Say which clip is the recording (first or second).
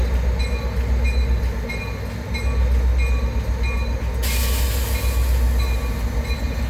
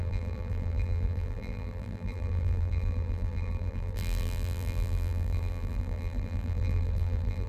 first